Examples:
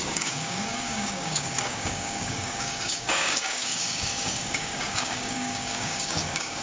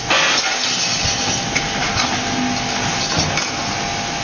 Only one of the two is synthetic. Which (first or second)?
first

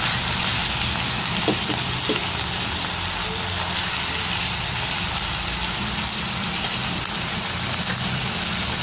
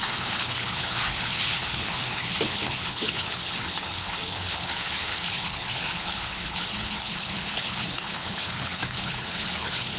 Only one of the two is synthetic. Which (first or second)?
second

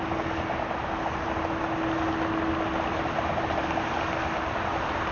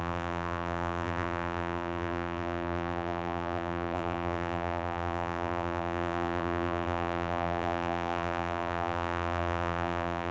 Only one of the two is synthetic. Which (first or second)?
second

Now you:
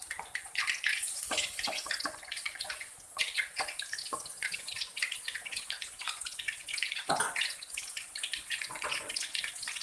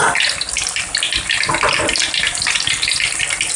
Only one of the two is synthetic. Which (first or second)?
first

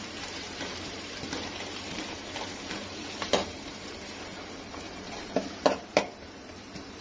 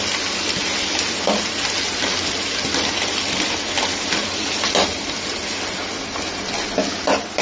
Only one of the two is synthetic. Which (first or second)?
first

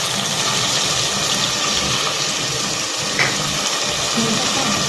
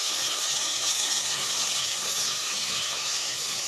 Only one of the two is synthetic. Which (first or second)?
second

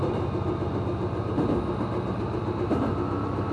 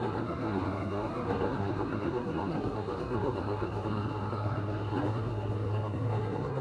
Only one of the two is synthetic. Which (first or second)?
second